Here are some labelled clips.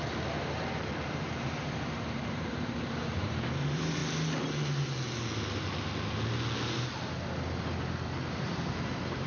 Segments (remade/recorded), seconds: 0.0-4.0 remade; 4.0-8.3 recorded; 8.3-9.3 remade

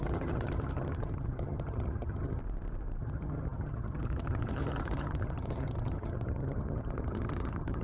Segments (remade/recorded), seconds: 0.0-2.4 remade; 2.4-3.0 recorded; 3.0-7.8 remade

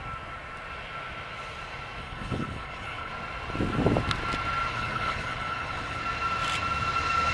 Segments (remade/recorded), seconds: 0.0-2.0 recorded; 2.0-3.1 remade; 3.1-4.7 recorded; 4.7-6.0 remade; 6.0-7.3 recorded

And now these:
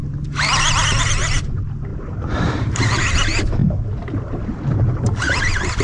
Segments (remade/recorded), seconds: 0.0-1.9 recorded; 1.9-3.1 remade; 3.1-5.8 recorded

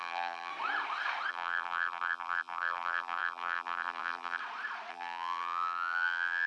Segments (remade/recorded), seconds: 0.0-0.5 remade; 0.5-1.3 recorded; 1.3-4.4 remade; 4.4-4.9 recorded; 4.9-6.5 remade